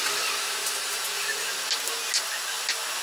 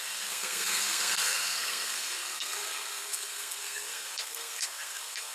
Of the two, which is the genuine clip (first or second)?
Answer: first